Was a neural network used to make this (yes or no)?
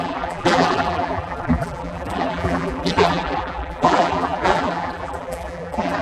yes